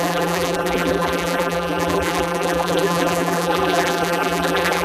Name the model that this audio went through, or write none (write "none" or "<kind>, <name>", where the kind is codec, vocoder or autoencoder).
vocoder, BigVGAN v2